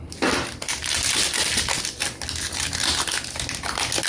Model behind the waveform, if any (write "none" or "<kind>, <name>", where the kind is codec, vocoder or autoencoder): none